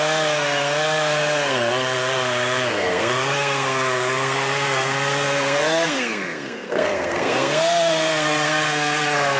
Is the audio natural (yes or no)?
no